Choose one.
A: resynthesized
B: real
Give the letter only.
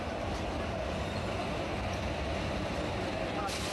B